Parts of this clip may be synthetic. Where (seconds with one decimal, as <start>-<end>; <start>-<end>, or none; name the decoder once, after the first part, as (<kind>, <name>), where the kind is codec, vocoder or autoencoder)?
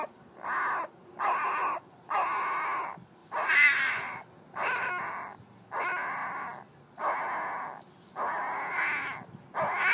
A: 3.2-4.9 (vocoder, BigVGAN v2)